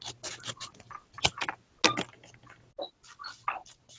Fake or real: real